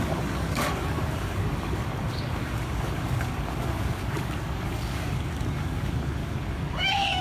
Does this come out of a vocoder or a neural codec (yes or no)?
yes